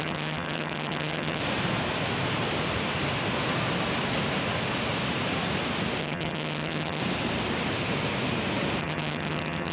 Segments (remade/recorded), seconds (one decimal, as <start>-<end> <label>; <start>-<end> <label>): 0.0-1.4 remade; 1.4-6.0 recorded; 6.0-7.0 remade; 7.0-8.8 recorded; 8.8-9.7 remade